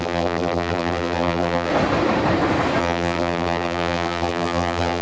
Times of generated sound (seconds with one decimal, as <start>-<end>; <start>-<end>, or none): 0.0-1.7; 2.8-5.0